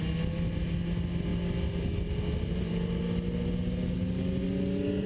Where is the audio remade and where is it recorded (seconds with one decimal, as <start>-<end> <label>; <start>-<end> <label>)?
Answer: 0.0-5.1 recorded